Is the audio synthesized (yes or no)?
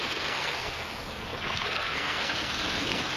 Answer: yes